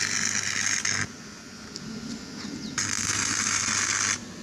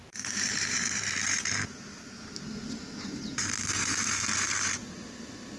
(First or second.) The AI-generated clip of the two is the second